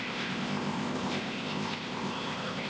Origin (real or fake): fake